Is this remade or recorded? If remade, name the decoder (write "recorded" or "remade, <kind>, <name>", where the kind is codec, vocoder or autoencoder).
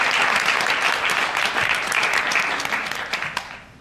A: recorded